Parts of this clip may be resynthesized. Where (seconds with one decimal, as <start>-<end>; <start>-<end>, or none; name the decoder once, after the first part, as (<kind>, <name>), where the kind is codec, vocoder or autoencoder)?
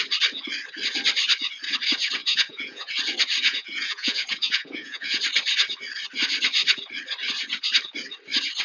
2.2-2.9 (vocoder, Vocos); 3.4-5.2